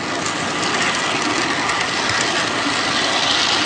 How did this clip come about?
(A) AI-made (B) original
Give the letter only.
B